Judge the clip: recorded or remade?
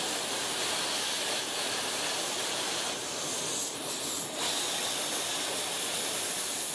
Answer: recorded